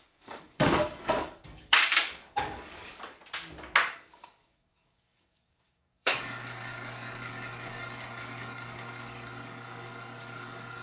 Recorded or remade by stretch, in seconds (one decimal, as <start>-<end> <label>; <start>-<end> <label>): 0.0-3.2 remade; 3.2-3.9 recorded; 3.9-10.8 remade